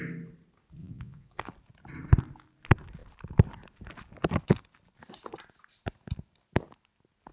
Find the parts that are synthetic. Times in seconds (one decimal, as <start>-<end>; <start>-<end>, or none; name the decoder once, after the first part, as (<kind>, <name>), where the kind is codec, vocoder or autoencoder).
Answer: 0.8-1.5 (vocoder, Vocos)